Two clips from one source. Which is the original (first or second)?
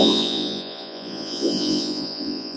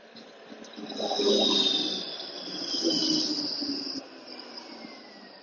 second